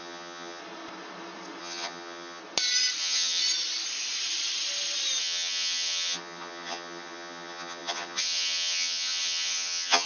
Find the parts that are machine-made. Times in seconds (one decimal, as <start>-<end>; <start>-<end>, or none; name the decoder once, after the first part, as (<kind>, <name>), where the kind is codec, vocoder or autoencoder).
0.0-0.6 (vocoder, HiFi-GAN); 1.6-2.4; 3.0-3.4; 5.2-10.1

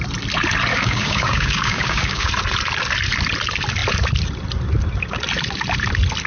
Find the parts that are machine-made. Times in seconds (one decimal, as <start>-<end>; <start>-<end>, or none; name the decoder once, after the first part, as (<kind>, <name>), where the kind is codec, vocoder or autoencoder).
0.7-2.3 (codec, DAC)

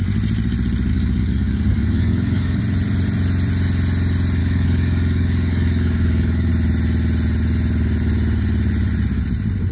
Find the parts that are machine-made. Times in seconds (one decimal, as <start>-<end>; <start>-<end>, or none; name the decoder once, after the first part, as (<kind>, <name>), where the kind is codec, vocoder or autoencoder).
0.9-2.6 (codec, DAC); 4.4-6.5

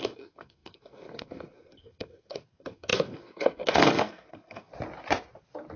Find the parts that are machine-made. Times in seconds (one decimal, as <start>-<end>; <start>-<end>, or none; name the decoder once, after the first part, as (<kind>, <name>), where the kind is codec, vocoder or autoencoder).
0.0-4.7 (codec, SNAC)

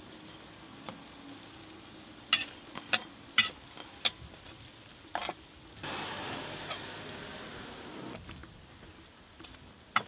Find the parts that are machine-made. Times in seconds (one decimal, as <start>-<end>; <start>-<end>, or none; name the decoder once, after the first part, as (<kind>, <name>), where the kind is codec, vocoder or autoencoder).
none

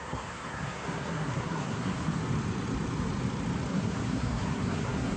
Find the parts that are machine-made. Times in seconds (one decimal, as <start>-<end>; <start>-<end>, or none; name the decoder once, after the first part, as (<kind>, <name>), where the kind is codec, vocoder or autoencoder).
0.0-2.2 (codec, SNAC); 3.7-5.2